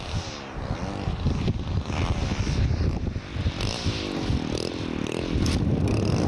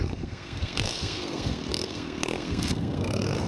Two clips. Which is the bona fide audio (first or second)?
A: first